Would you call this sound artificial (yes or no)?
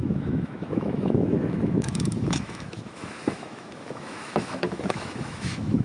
yes